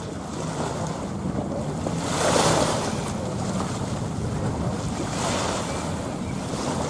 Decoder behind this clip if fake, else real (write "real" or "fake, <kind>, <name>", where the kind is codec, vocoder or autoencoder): real